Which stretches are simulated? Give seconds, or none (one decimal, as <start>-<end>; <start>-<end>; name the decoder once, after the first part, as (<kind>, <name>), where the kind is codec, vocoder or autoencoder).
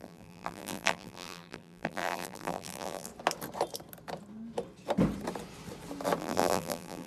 0.0-3.1 (vocoder, BigVGAN v2); 6.2-7.1